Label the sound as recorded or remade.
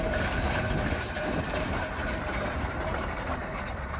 remade